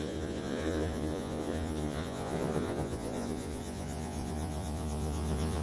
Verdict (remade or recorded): remade